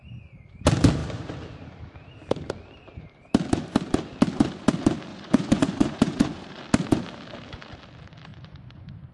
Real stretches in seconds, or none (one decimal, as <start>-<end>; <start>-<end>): 0.0-5.1; 6.6-8.3